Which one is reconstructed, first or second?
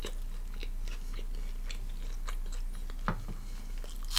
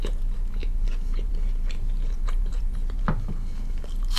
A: second